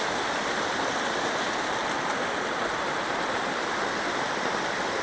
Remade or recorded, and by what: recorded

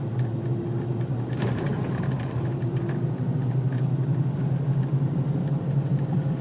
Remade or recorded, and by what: recorded